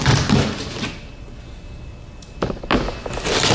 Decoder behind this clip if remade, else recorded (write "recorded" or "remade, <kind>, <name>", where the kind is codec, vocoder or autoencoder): recorded